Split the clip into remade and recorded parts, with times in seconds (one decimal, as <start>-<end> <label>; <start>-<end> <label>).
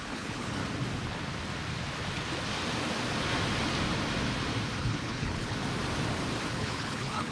0.0-0.6 remade; 0.6-4.8 recorded; 4.8-5.6 remade; 5.6-6.5 recorded; 6.5-7.3 remade